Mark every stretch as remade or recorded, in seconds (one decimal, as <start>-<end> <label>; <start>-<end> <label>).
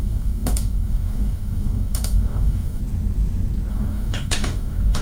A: 0.0-2.8 remade; 2.8-3.7 recorded; 3.7-5.0 remade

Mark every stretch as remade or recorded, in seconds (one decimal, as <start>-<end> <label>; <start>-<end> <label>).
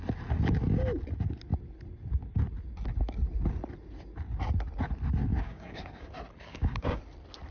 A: 0.0-5.3 recorded; 5.3-6.1 remade; 6.1-6.5 recorded; 6.5-7.0 remade; 7.0-7.5 recorded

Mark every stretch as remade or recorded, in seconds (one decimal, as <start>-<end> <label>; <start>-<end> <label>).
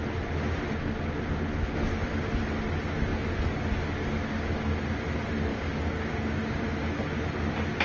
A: 0.0-5.5 recorded; 5.5-6.6 remade; 6.6-7.8 recorded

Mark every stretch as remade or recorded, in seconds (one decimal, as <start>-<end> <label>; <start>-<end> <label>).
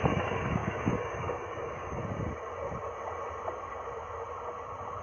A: 0.0-2.0 remade; 2.0-5.0 recorded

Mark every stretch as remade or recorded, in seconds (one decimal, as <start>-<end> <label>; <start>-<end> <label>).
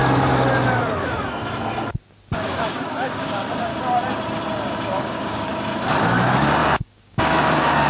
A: 0.0-2.3 recorded; 2.3-3.7 remade; 3.7-4.9 recorded; 4.9-5.5 remade; 5.5-6.0 recorded; 6.0-7.9 remade